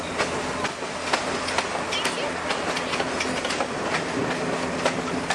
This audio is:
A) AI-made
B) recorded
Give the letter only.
B